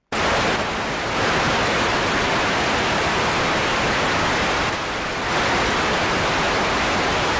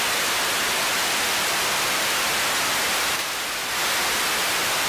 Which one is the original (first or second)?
first